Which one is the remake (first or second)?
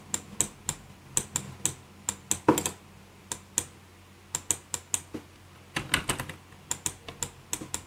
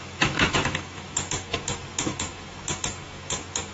second